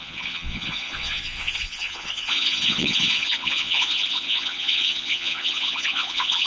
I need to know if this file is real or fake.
fake